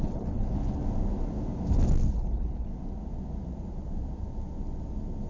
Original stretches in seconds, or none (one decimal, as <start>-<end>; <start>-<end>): 0.8-2.1; 2.7-5.3